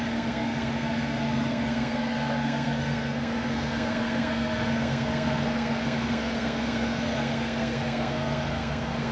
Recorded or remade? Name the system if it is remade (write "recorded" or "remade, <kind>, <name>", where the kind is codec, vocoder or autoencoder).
remade, codec, SNAC